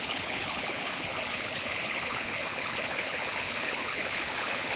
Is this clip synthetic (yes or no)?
yes